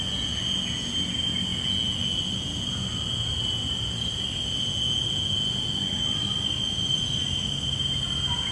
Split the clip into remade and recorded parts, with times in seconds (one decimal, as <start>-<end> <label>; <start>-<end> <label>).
0.0-8.5 recorded